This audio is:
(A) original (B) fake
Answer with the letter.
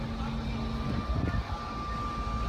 A